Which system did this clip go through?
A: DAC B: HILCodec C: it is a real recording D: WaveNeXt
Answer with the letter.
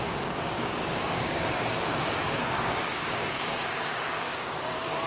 A